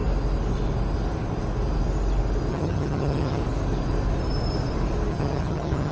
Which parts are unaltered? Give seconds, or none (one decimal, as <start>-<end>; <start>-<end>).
0.0-2.5; 3.4-5.1